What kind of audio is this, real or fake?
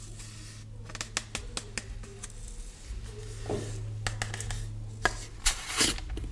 real